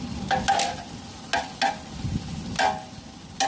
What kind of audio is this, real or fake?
real